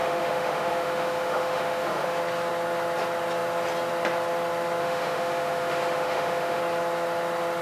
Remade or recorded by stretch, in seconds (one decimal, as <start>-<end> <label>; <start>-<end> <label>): 0.0-2.2 remade; 2.2-4.8 recorded; 4.8-6.6 remade; 6.6-7.6 recorded